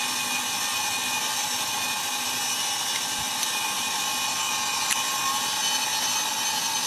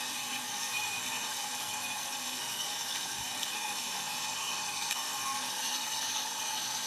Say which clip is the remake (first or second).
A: second